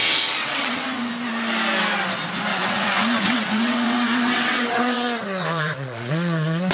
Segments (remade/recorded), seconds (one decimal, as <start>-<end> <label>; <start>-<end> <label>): 0.0-0.4 recorded; 0.4-1.1 remade; 1.1-2.5 recorded; 2.5-6.7 remade